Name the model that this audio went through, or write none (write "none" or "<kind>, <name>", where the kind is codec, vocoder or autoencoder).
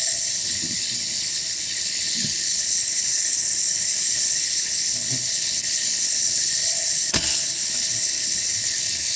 codec, HILCodec